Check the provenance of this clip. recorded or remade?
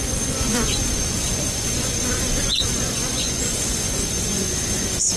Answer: remade